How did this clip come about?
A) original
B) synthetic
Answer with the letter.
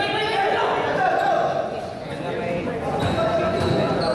B